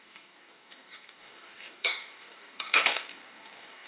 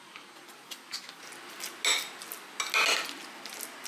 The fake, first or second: first